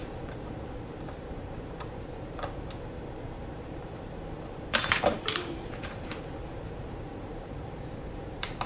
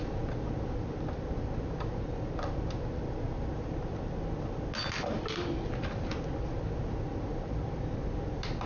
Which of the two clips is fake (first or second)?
first